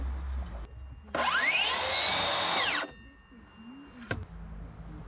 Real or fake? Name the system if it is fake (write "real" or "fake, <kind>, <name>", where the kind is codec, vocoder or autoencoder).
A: real